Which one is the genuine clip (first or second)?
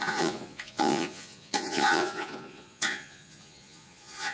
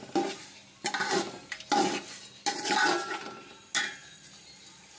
second